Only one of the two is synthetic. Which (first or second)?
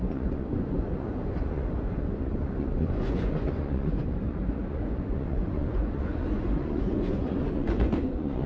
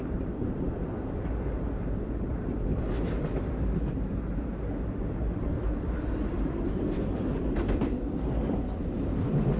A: first